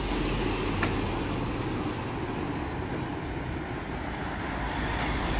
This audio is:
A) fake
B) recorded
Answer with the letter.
B